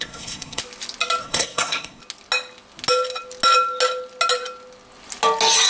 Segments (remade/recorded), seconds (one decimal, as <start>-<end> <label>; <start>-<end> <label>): 0.0-0.6 remade; 0.6-1.2 recorded; 1.2-2.0 remade; 2.0-5.7 recorded